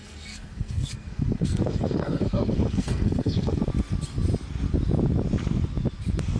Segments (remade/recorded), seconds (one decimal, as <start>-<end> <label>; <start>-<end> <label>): 0.0-3.6 remade; 3.6-6.4 recorded